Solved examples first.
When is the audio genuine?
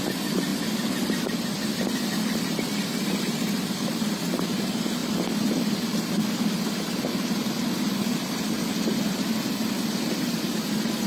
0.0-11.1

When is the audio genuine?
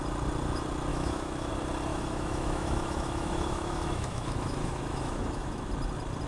0.0-0.9; 1.5-1.9; 5.7-6.3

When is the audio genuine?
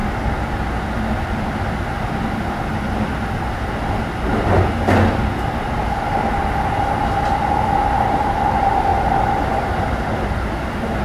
0.0-11.0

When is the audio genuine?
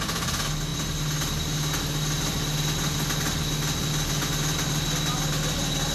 0.0-5.9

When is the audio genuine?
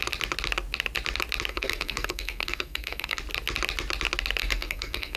0.0-1.5; 3.2-4.4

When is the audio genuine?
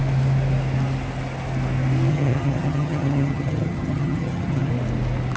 0.0-2.1; 4.7-5.4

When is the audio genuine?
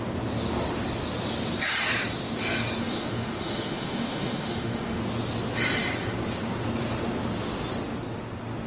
0.0-2.8; 5.0-8.7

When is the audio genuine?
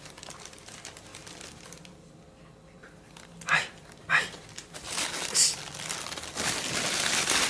0.0-7.5